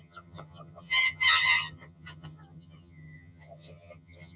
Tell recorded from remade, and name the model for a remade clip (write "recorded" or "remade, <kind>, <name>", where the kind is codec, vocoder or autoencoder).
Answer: remade, vocoder, HiFi-GAN